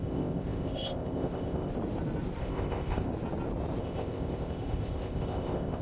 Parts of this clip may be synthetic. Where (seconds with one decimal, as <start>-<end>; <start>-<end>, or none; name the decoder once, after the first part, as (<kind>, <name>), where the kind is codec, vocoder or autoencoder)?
0.0-1.7 (codec, ZipCodec); 2.4-3.1; 3.8-5.8